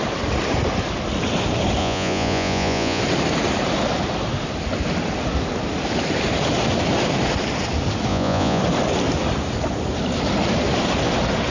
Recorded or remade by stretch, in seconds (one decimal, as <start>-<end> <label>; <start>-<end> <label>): 0.0-1.8 recorded; 1.8-3.0 remade; 3.0-8.1 recorded; 8.1-8.6 remade; 8.6-11.5 recorded